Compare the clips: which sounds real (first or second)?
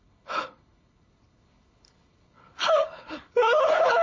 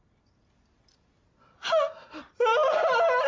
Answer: second